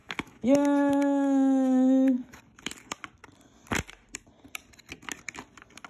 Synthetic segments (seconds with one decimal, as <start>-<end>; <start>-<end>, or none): 0.0-2.4